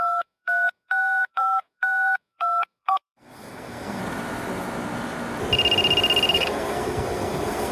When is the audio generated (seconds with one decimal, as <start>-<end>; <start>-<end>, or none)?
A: 0.0-4.0; 6.3-7.7